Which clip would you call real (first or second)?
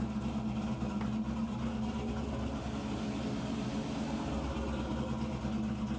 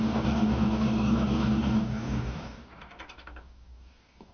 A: first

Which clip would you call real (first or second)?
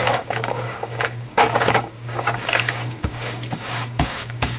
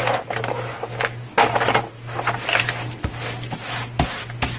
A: second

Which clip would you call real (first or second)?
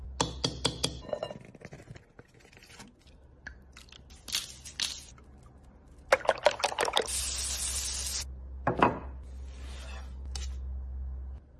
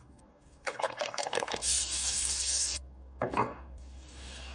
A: first